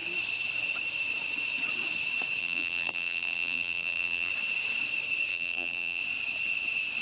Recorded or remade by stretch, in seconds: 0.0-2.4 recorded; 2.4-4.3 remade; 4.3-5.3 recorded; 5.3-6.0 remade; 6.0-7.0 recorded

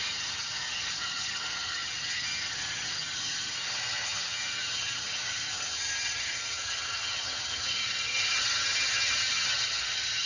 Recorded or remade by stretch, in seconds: 0.0-10.3 remade

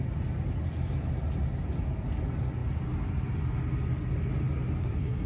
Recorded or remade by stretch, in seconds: 0.0-4.8 recorded; 4.8-5.3 remade

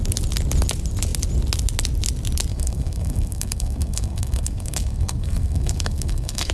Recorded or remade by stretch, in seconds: 0.0-2.5 recorded; 2.5-6.5 remade

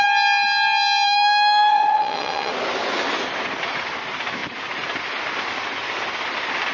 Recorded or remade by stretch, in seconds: 0.0-1.7 recorded; 1.7-2.5 remade; 2.5-6.7 recorded

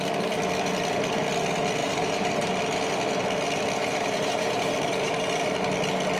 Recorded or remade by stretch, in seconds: 0.0-1.8 recorded; 1.8-2.5 remade; 2.5-3.8 recorded; 3.8-5.2 remade; 5.2-6.2 recorded

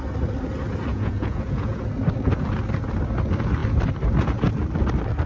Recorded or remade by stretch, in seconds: 0.0-0.9 recorded; 0.9-1.8 remade; 1.8-5.3 recorded